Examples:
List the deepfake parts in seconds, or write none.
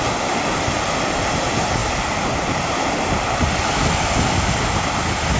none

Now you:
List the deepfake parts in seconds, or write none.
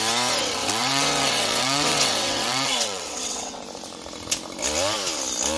0.4-3.6 (vocoder, WaveNeXt)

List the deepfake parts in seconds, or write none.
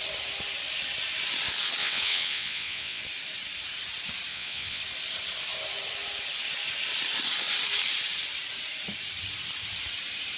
1.8-3.0 (vocoder, WaveNeXt); 4.3-4.8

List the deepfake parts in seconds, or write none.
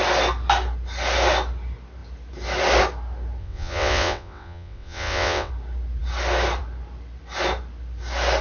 3.4-5.5 (vocoder, WaveNeXt)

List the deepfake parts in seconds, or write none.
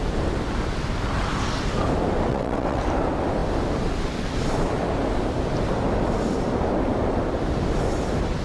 2.3-2.8 (vocoder, WaveNeXt)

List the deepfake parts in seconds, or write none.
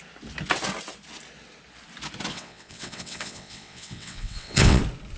2.3-4.8 (vocoder, WaveNeXt)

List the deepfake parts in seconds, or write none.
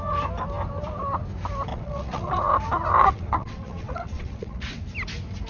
1.7-2.4 (vocoder, WaveNeXt); 3.0-4.8